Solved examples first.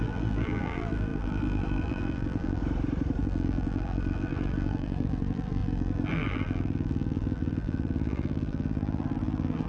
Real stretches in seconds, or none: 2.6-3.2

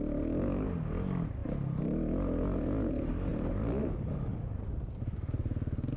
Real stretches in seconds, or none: 0.0-4.3; 4.9-6.0